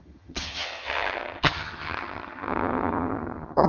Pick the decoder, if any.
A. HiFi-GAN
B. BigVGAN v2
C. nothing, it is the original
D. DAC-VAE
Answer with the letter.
A